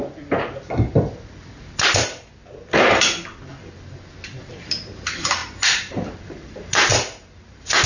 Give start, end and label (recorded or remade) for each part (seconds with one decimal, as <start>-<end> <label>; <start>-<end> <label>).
0.0-2.7 recorded; 2.7-6.9 remade; 6.9-7.4 recorded; 7.4-7.9 remade